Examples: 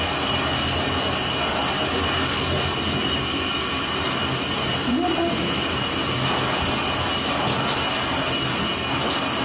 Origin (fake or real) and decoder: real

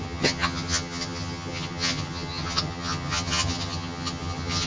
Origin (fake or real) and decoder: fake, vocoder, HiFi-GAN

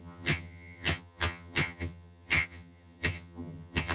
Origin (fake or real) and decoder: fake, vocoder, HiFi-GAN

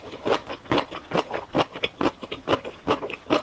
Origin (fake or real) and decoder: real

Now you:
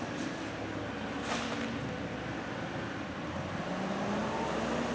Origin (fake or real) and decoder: real